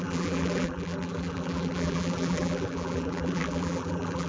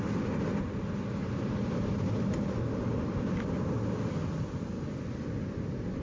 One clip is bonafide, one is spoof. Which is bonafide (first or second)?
second